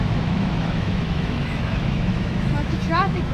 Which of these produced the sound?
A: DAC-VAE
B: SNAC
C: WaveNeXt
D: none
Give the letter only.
A